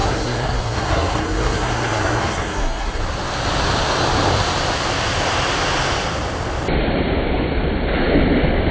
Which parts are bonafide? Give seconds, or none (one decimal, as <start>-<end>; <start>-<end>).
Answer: 3.0-8.7